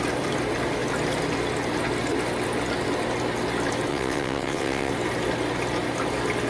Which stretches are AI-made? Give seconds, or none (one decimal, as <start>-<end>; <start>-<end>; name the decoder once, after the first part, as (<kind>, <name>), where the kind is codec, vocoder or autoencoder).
3.9-4.9 (vocoder, WaveNeXt)